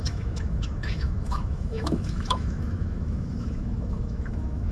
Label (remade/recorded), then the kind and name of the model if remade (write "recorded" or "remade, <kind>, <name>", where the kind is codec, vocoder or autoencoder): remade, autoencoder, DAC-VAE